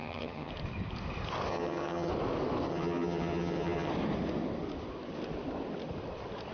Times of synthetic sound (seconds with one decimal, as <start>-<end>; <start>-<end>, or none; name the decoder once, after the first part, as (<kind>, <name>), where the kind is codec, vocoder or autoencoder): 0.0-0.5 (vocoder, HiFi-GAN); 1.5-2.1; 2.7-3.9